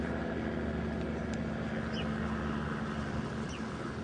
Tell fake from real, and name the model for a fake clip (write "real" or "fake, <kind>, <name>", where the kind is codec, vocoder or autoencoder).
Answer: real